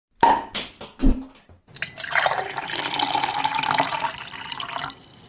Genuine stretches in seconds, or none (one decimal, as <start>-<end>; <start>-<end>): 0.0-5.3